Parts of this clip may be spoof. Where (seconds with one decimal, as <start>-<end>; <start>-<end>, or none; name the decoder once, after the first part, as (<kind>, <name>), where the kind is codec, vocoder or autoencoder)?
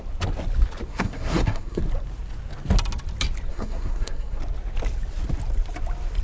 0.9-1.8 (codec, SNAC); 3.5-4.4